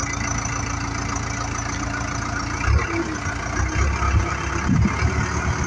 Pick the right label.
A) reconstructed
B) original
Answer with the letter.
B